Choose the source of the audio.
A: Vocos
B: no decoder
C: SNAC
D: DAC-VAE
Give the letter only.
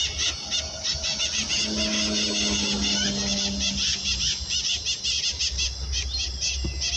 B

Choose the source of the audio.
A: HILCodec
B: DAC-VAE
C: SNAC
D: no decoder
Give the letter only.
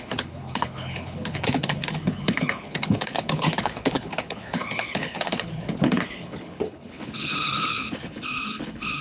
A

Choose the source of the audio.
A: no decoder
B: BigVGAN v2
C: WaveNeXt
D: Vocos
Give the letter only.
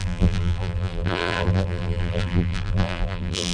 B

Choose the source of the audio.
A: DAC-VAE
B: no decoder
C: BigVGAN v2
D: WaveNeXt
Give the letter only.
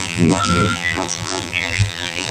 C